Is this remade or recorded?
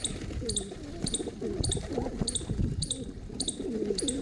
recorded